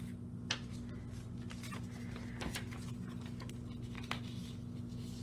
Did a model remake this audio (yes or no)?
no